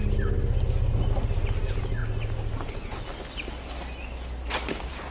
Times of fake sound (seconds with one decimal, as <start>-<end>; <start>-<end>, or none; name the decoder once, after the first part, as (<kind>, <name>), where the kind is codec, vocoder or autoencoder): 1.1-2.0 (vocoder, BigVGAN v2)